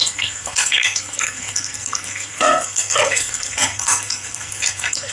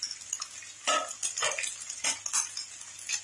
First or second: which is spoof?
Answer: first